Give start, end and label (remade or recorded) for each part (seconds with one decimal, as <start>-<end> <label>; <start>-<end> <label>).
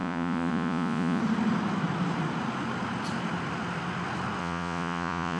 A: 0.0-1.2 remade; 1.2-4.4 recorded; 4.4-5.4 remade